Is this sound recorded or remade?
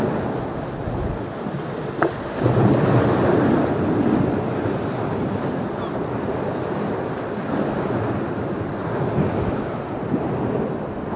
recorded